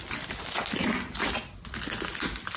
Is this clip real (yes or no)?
yes